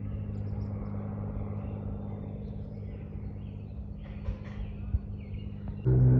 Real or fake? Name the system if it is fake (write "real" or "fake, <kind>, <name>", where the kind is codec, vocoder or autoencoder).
real